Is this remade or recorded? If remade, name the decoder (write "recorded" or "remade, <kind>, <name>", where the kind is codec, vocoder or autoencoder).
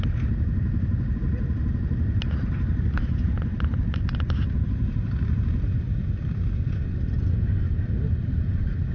recorded